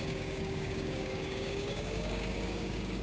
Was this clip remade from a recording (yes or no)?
yes